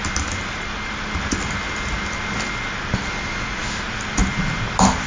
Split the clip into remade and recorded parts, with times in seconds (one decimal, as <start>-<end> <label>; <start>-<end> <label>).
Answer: 0.0-3.1 recorded; 3.1-4.2 remade; 4.2-5.1 recorded

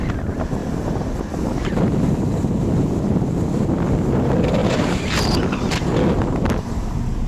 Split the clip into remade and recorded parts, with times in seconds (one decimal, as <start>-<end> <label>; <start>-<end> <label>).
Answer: 0.0-0.6 recorded; 0.6-1.1 remade; 1.1-4.6 recorded; 4.6-5.7 remade; 5.7-6.2 recorded; 6.2-6.7 remade; 6.7-7.3 recorded

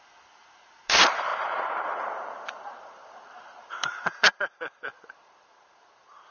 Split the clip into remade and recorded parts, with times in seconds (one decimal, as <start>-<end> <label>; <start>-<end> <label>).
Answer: 0.0-6.3 remade

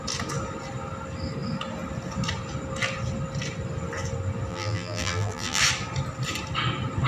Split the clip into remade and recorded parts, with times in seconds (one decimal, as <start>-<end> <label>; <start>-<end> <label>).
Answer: 0.0-4.5 recorded; 4.5-5.6 remade; 5.6-7.1 recorded